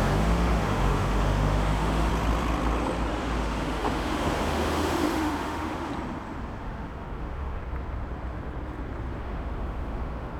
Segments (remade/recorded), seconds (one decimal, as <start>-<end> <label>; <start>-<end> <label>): 0.0-2.1 remade; 2.1-3.1 recorded; 3.1-5.9 remade; 5.9-6.6 recorded; 6.6-7.6 remade; 7.6-9.2 recorded; 9.2-10.4 remade